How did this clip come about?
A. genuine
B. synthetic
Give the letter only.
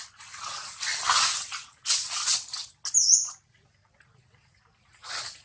A